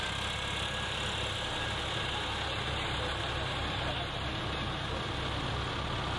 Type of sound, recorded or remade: recorded